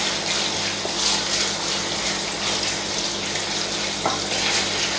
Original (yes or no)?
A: yes